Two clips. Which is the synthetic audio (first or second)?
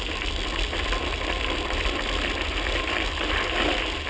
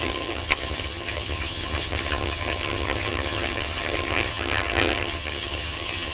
second